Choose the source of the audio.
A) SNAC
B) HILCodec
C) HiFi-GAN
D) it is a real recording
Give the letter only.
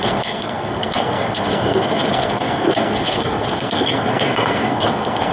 A